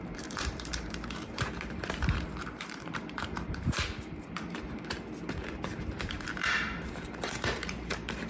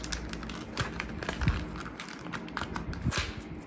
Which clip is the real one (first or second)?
second